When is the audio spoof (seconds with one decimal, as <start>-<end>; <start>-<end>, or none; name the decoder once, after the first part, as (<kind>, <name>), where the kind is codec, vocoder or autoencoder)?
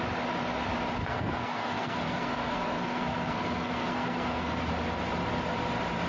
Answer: 1.0-4.7 (codec, SNAC)